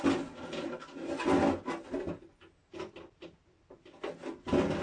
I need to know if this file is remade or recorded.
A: recorded